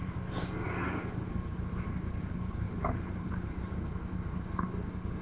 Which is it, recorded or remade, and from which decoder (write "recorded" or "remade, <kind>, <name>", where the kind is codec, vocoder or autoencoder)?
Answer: remade, codec, DAC